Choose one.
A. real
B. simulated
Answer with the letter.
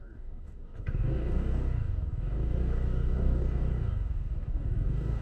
B